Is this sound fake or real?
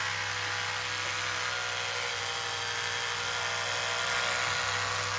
real